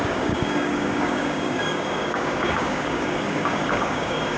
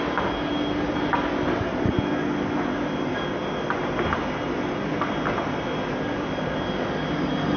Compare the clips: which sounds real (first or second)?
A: second